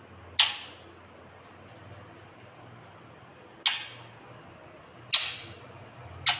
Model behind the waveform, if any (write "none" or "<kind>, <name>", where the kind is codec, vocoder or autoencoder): none